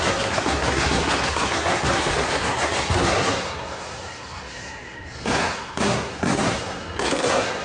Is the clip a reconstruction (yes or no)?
yes